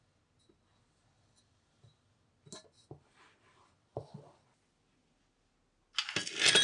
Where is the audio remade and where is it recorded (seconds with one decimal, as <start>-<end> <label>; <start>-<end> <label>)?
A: 0.0-6.6 recorded